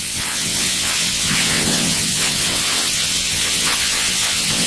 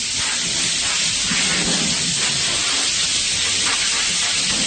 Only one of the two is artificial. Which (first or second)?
first